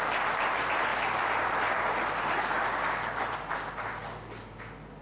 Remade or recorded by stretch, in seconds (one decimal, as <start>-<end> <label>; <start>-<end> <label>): 0.0-5.0 recorded

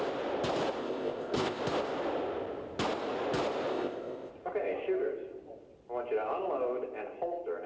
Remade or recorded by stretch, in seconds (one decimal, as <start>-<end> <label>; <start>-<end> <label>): 0.0-0.8 recorded; 0.8-1.6 remade; 1.6-3.7 recorded; 3.7-4.3 remade; 4.3-7.7 recorded

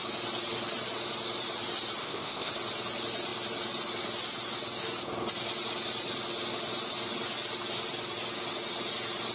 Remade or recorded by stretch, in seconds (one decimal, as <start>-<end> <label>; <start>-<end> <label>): 0.0-2.0 recorded; 2.0-2.5 remade; 2.5-9.3 recorded